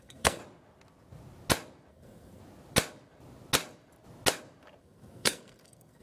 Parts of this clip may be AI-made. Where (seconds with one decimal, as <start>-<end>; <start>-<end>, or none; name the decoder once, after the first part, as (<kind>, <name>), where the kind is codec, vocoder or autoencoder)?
0.0-0.4 (codec, SNAC); 1.9-2.4; 4.8-6.0